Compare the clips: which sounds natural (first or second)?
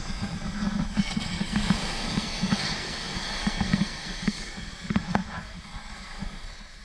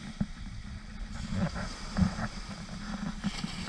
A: second